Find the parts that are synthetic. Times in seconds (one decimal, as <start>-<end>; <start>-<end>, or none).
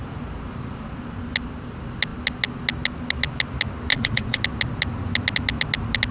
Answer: 3.9-4.4